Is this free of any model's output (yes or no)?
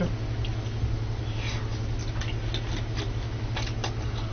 yes